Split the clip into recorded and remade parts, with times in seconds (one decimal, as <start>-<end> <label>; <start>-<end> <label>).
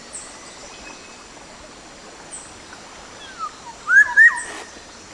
0.0-5.1 recorded